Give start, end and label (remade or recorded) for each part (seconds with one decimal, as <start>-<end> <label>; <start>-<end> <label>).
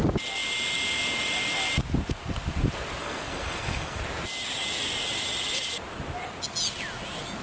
0.0-3.0 recorded; 3.0-4.0 remade; 4.0-7.4 recorded